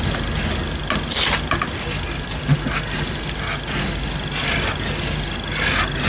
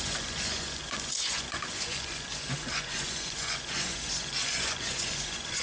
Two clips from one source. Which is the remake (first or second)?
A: second